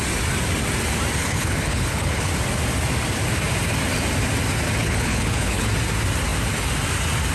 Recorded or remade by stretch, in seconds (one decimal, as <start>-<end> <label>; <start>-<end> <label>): 0.0-1.2 recorded; 1.2-2.3 remade; 2.3-4.8 recorded; 4.8-5.7 remade; 5.7-7.3 recorded